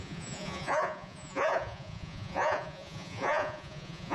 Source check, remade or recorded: remade